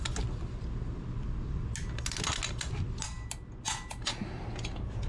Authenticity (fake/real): real